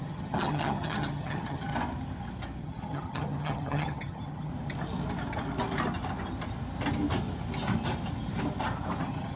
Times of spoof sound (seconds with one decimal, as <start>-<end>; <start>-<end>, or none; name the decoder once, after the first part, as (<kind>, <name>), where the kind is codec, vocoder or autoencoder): 0.0-1.7 (vocoder, HiFi-GAN); 2.6-4.5; 9.0-9.4